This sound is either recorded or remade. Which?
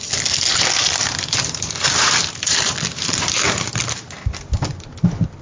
recorded